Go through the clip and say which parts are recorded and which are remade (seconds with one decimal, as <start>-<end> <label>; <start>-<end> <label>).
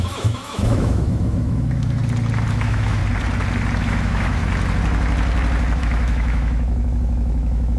0.0-2.0 remade; 2.0-2.5 recorded; 2.5-3.0 remade; 3.0-3.8 recorded; 3.8-4.4 remade; 4.4-5.8 recorded; 5.8-7.8 remade